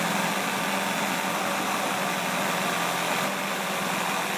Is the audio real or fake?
real